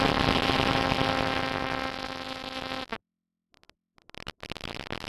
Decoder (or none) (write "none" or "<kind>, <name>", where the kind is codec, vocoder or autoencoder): none